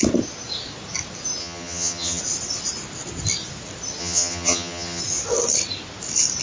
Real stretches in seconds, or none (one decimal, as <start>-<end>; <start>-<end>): 0.0-1.4; 2.2-4.0; 5.0-6.4